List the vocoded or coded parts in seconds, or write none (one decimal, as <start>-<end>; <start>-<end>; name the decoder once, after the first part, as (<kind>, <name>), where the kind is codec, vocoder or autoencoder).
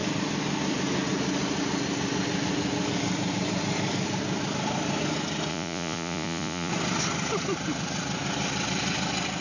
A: 5.5-6.7 (vocoder, Vocos)